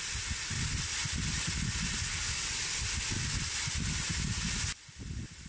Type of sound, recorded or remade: recorded